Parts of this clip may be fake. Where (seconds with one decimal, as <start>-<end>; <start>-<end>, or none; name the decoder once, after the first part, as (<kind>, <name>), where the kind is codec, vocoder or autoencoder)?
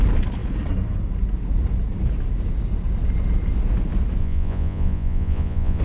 4.2-5.8 (vocoder, Vocos)